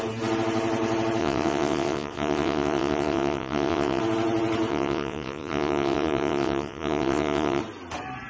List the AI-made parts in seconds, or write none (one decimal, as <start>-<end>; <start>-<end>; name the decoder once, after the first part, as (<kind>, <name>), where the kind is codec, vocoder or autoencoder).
1.2-4.0 (vocoder, WaveNeXt); 4.7-7.6